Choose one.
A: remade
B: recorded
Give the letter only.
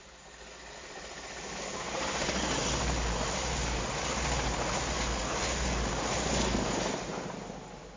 B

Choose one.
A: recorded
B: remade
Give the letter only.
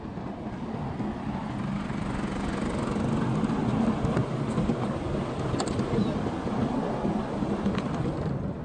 A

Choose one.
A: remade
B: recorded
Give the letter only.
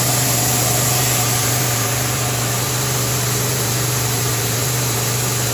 A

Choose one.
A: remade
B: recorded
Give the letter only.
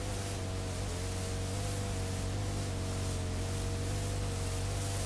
B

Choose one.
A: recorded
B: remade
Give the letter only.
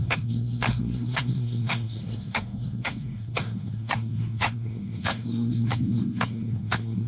B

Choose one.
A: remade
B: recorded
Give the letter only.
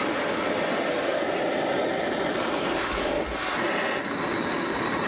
B